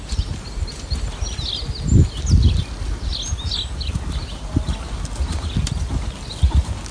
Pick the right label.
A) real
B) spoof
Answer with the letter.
A